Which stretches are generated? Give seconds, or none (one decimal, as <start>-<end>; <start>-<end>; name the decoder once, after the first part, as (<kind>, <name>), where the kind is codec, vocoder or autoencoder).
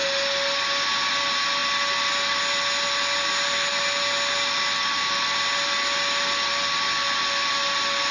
none